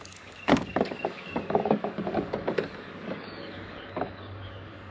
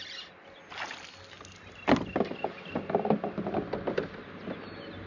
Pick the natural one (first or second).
second